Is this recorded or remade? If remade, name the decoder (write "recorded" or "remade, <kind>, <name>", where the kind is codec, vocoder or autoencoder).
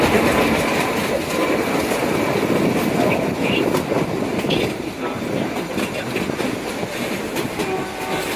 recorded